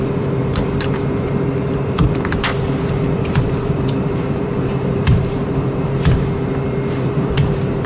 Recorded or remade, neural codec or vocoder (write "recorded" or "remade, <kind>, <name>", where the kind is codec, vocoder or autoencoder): remade, vocoder, BigVGAN v2